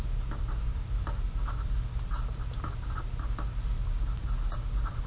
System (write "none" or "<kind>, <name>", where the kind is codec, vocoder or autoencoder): none